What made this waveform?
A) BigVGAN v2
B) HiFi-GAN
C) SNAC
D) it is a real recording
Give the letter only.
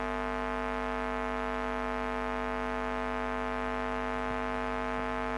D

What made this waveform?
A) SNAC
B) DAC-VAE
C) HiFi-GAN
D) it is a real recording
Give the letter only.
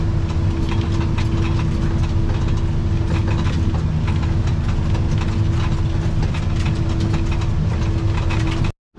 D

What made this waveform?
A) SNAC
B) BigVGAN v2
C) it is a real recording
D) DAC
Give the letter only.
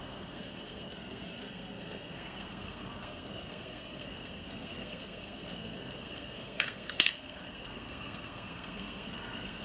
A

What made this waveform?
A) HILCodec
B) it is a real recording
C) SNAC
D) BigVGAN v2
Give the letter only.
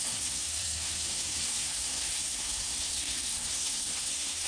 C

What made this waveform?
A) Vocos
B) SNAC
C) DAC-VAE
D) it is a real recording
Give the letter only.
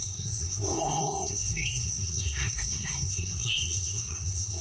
B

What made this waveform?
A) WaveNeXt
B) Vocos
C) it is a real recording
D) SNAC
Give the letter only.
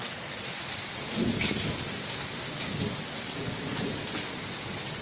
C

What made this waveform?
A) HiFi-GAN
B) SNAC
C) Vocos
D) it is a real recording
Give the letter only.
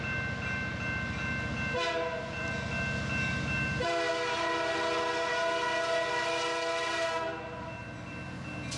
D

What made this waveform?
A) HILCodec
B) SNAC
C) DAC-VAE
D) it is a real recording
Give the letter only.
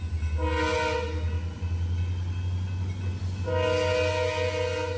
D